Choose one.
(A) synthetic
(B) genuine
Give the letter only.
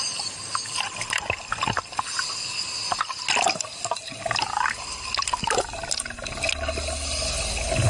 B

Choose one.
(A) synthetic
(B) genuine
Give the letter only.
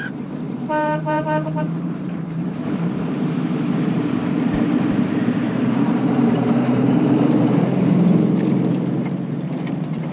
A